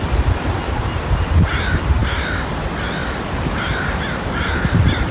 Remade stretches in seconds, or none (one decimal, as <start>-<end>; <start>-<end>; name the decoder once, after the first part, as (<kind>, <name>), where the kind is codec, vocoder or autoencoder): 0.0-2.0 (vocoder, BigVGAN v2); 2.6-3.0; 3.5-5.1